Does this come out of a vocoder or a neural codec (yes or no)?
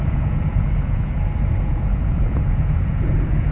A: yes